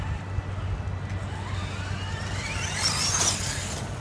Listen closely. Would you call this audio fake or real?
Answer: real